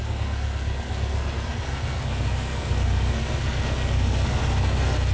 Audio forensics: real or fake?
fake